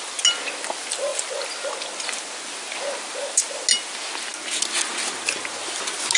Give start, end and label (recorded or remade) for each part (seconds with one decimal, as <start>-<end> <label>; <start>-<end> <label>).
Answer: 0.0-6.2 recorded